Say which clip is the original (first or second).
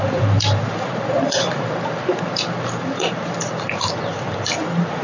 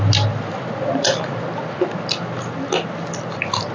second